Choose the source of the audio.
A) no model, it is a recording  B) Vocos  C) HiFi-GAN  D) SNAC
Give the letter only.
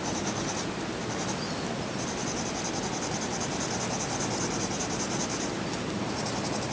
A